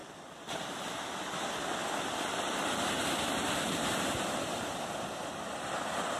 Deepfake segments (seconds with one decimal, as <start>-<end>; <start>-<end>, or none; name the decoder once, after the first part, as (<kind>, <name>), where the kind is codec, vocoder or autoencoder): none